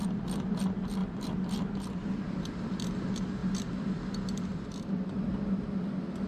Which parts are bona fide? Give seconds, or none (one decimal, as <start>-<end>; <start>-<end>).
0.0-1.0; 2.1-3.4; 4.0-4.5; 5.5-6.3